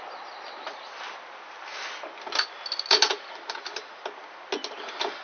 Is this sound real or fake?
real